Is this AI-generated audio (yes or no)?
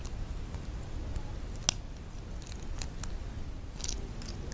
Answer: no